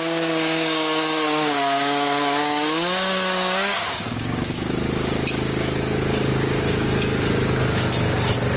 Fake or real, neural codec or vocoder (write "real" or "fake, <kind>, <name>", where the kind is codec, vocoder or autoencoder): fake, codec, DAC